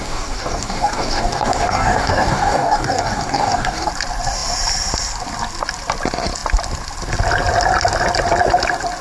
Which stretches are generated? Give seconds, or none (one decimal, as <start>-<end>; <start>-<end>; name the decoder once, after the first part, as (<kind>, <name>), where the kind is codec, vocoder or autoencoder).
0.0-3.9 (codec, DAC)

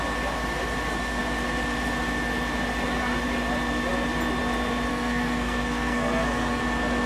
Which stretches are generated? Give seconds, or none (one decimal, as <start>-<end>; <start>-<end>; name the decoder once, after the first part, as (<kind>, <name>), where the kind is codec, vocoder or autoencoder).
4.9-6.6 (codec, SNAC)

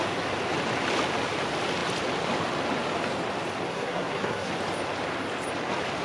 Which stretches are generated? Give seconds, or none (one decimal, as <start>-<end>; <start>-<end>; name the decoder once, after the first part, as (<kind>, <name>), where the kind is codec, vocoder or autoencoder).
3.7-4.5 (codec, SNAC)